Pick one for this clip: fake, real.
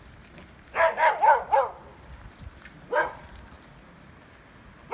real